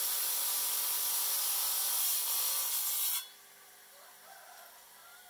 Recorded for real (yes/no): yes